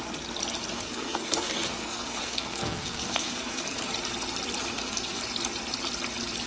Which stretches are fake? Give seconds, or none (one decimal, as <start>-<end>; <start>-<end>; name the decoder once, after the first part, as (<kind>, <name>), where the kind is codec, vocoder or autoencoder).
0.7-3.9 (codec, SNAC); 4.6-5.2